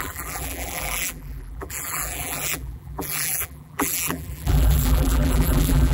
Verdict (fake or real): fake